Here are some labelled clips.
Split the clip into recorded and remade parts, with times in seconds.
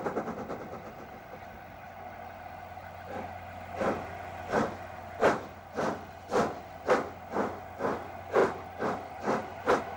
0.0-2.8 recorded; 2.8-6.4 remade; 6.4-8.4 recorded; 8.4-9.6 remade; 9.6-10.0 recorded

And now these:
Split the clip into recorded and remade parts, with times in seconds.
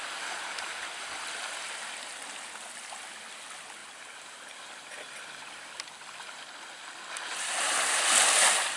0.0-3.8 recorded; 3.8-5.7 remade; 5.7-8.8 recorded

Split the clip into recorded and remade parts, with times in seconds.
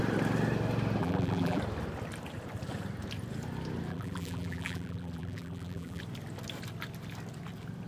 0.0-1.0 recorded; 1.0-1.6 remade; 1.6-3.9 recorded; 3.9-6.0 remade; 6.0-7.9 recorded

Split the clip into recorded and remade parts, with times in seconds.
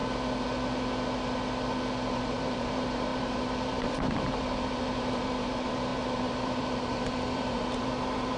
0.0-2.1 recorded; 2.1-8.4 remade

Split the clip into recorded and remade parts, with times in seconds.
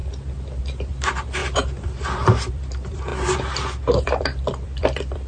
0.0-0.6 recorded; 0.6-3.1 remade; 3.1-3.8 recorded; 3.8-5.3 remade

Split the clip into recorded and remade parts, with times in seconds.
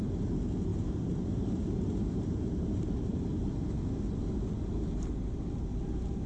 0.0-0.7 recorded; 0.7-3.5 remade; 3.5-6.3 recorded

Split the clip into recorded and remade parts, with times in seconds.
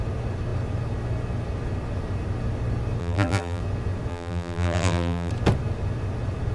0.0-3.0 recorded; 3.0-3.6 remade; 3.6-4.1 recorded; 4.1-5.3 remade; 5.3-6.5 recorded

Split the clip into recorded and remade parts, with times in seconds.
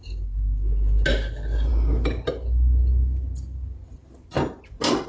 0.0-5.1 recorded